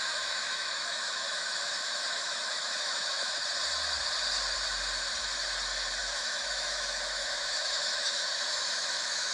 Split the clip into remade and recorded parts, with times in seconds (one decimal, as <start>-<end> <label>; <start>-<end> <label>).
0.0-3.4 remade; 3.4-6.0 recorded; 6.0-9.3 remade